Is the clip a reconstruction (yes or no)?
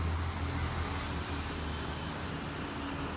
no